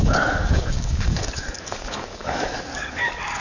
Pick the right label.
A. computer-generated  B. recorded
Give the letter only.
A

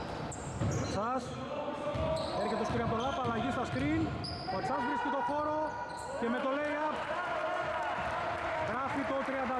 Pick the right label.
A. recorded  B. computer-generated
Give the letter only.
A